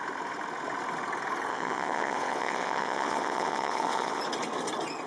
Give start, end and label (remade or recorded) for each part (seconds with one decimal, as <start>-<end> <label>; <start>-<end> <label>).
0.0-1.5 recorded; 1.5-4.2 remade; 4.2-5.1 recorded